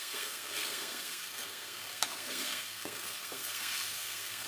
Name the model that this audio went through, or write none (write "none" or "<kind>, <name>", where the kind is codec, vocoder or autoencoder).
codec, SNAC